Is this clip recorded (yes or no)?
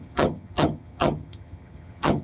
no